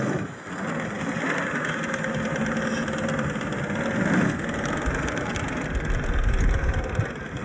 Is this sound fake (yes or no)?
no